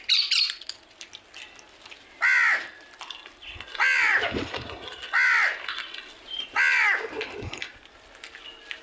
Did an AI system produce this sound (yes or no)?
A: no